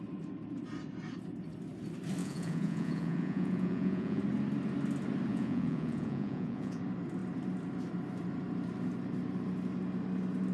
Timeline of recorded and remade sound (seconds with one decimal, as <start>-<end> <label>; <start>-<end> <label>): 0.0-2.2 recorded; 2.2-4.2 remade; 4.2-5.3 recorded; 5.3-6.8 remade; 6.8-10.5 recorded